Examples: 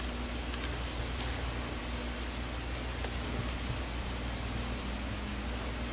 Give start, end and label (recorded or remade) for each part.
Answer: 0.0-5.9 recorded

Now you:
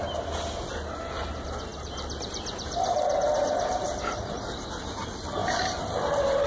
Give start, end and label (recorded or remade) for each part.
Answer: 0.0-6.5 recorded

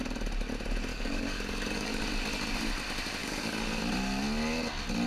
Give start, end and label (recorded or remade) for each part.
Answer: 0.0-0.9 recorded; 0.9-2.0 remade; 2.0-3.2 recorded; 3.2-3.8 remade; 3.8-5.1 recorded

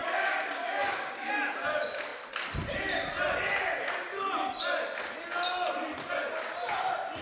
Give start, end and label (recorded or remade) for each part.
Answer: 0.0-1.3 remade; 1.3-7.2 recorded

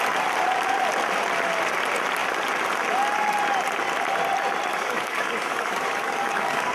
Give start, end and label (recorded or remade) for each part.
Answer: 0.0-4.7 recorded; 4.7-6.7 remade